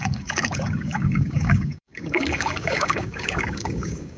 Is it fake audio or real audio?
fake